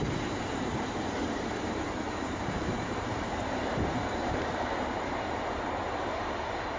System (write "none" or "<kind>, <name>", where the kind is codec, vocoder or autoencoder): vocoder, BigVGAN v2